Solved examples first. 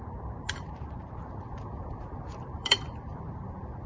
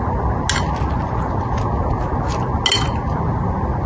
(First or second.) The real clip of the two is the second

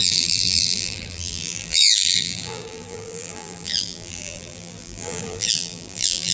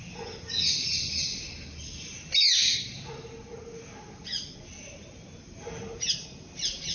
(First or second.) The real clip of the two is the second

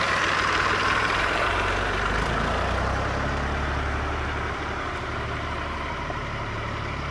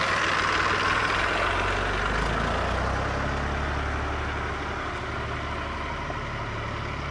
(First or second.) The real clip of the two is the second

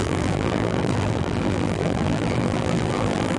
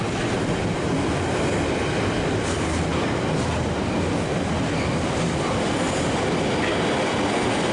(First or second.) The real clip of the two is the second